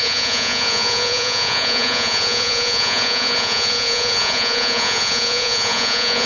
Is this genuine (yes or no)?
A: no